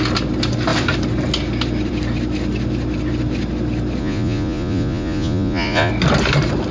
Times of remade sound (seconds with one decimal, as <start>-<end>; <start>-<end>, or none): 4.0-5.9